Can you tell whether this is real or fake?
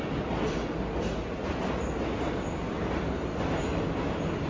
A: real